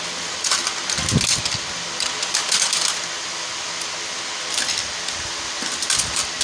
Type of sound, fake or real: real